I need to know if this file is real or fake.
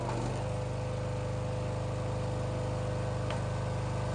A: real